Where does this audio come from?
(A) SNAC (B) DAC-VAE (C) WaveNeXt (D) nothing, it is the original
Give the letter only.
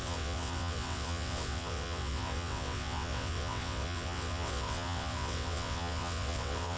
C